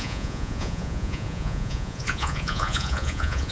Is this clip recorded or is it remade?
remade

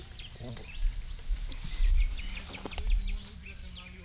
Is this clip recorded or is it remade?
recorded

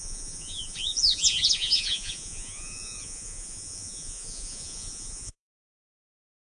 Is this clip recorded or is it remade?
remade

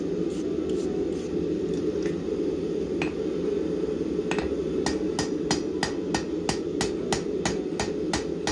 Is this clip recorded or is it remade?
recorded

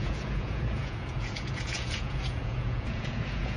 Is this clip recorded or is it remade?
remade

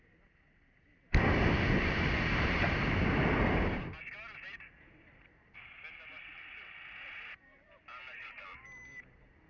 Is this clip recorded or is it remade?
recorded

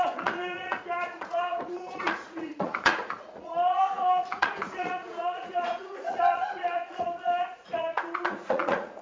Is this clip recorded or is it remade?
remade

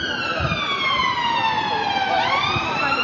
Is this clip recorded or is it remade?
recorded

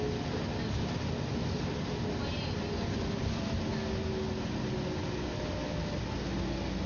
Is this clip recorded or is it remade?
recorded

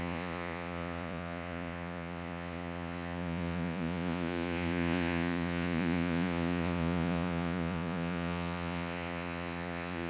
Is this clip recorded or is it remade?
remade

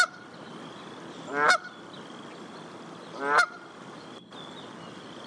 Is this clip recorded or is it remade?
recorded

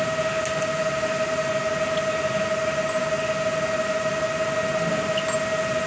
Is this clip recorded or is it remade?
recorded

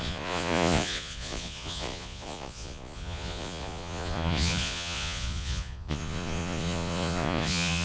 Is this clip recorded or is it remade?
remade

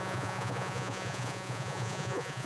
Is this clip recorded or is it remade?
remade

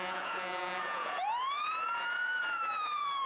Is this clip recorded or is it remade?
remade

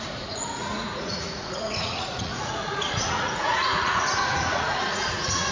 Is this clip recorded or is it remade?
remade